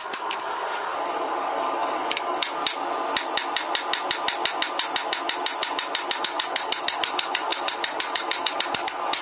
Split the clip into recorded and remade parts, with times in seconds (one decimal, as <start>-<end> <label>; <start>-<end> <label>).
0.0-2.6 remade; 2.6-6.2 recorded; 6.2-9.2 remade